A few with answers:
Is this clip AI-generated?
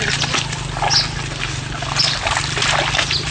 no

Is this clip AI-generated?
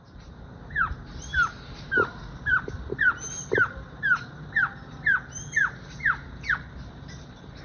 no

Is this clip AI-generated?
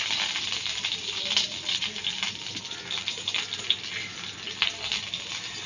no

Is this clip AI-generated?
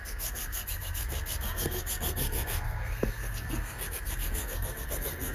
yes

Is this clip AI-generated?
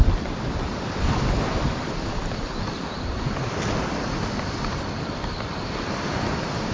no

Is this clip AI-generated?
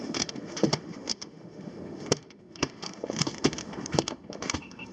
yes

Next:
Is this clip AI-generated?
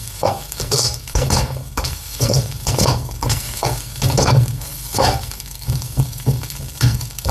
yes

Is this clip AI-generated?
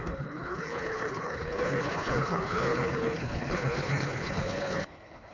yes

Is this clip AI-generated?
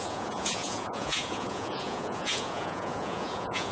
yes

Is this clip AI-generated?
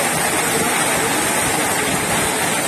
no